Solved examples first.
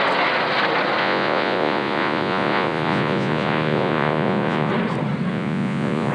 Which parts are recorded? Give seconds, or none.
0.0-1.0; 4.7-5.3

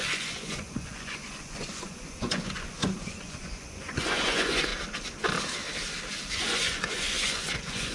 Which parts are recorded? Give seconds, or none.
4.7-6.3

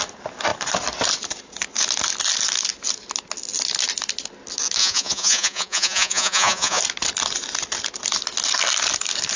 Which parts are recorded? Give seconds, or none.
0.0-4.8; 6.8-9.4

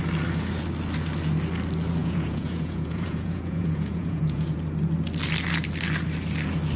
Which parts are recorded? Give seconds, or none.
0.0-2.0; 4.6-6.8

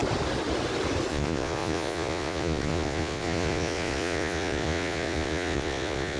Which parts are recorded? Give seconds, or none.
0.0-1.1

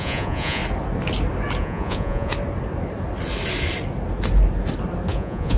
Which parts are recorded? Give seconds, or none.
0.6-1.6; 2.3-5.1

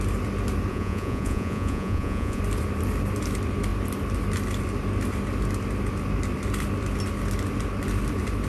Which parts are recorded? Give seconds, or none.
0.0-0.7; 2.4-8.5